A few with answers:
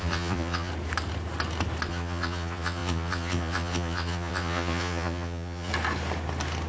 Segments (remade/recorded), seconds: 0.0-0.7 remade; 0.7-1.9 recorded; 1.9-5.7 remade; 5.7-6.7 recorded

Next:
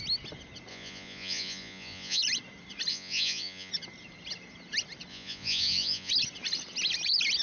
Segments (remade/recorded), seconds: 0.0-0.7 recorded; 0.7-2.2 remade; 2.2-2.9 recorded; 2.9-3.7 remade; 3.7-5.1 recorded; 5.1-6.1 remade; 6.1-7.4 recorded

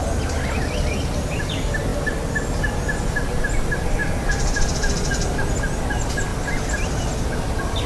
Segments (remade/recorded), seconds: 0.0-7.9 recorded

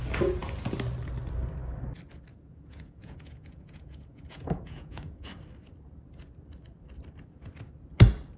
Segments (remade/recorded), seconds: 0.0-2.3 recorded; 2.3-5.3 remade; 5.3-8.4 recorded